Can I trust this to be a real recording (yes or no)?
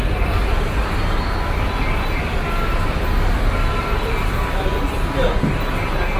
yes